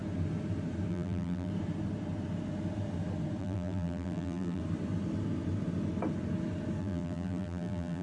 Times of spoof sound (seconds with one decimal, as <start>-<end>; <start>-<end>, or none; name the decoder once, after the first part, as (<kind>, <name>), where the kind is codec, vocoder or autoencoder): 0.9-1.5 (vocoder, BigVGAN v2); 3.4-4.6; 6.8-8.0